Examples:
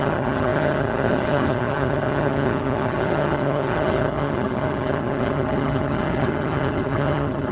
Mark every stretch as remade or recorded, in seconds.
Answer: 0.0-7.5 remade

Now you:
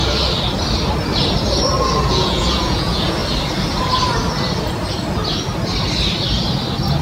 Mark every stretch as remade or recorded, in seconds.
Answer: 0.0-2.1 recorded; 2.1-3.2 remade; 3.2-7.0 recorded

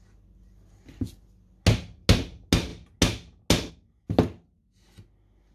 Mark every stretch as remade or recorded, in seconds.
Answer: 0.0-5.5 recorded

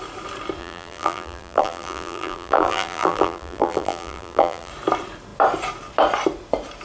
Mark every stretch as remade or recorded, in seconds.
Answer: 0.0-0.6 recorded; 0.6-4.7 remade; 4.7-6.8 recorded

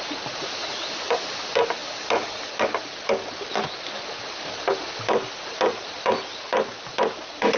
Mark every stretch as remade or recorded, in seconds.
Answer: 0.0-7.6 recorded

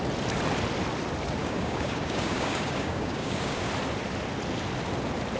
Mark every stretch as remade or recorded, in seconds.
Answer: 0.0-1.4 recorded; 1.4-3.7 remade; 3.7-5.4 recorded

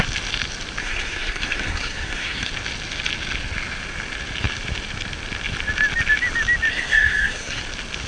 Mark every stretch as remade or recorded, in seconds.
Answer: 0.0-0.8 recorded; 0.8-2.5 remade; 2.5-6.7 recorded; 6.7-7.6 remade; 7.6-8.1 recorded

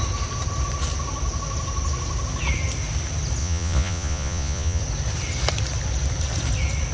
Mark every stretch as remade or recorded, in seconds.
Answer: 0.0-3.4 recorded; 3.4-4.8 remade; 4.8-6.9 recorded